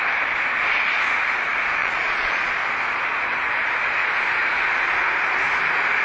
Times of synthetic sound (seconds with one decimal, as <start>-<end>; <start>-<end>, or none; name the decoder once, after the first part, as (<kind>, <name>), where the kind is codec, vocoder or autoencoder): 1.8-2.5 (vocoder, Vocos)